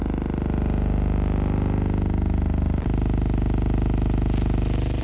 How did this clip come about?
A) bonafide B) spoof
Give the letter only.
A